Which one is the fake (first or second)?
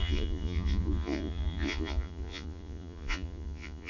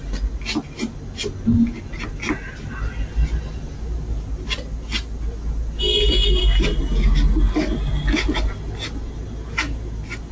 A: first